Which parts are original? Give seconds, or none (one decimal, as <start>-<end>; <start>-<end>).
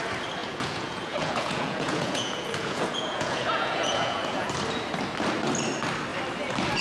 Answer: 0.0-0.4; 4.5-6.8